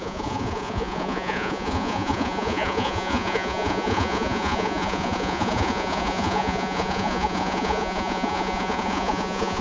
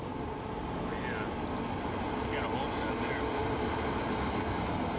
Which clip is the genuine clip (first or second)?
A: second